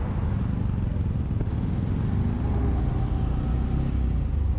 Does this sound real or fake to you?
real